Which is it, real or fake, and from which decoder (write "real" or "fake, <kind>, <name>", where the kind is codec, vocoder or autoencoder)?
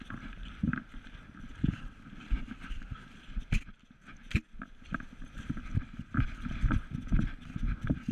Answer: real